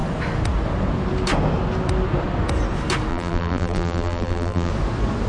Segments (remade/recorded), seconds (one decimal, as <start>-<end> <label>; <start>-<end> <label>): 0.0-3.1 recorded; 3.1-4.7 remade; 4.7-5.3 recorded